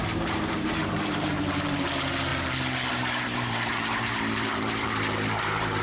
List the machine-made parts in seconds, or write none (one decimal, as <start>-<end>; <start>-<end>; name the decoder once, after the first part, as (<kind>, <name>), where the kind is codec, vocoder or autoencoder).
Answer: 0.0-2.3 (vocoder, BigVGAN v2); 2.9-5.8